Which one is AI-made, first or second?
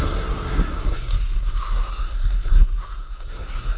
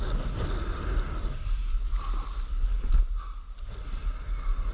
first